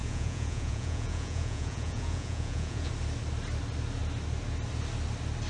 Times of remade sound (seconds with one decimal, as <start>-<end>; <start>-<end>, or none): 0.0-2.9